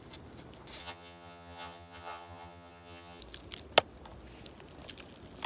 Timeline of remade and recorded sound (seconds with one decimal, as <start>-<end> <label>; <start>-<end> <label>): 0.0-0.8 recorded; 0.8-3.2 remade; 3.2-5.5 recorded